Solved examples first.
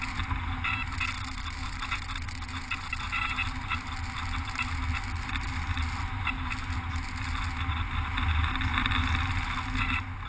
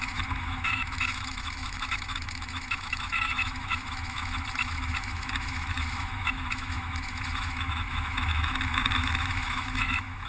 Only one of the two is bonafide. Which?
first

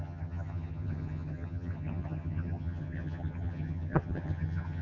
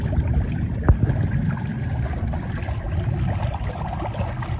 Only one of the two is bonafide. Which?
second